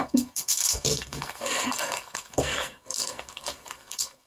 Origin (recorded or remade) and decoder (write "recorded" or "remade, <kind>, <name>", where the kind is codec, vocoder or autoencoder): remade, codec, SNAC